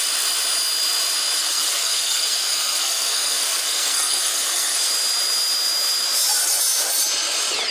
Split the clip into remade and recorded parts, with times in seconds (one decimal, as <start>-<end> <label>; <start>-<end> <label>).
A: 0.0-1.4 recorded; 1.4-4.9 remade; 4.9-7.7 recorded